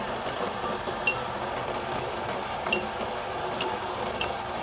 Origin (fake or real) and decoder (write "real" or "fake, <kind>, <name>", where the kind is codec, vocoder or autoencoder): real